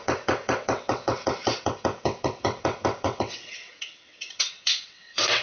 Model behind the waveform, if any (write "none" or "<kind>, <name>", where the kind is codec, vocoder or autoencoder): vocoder, WaveNeXt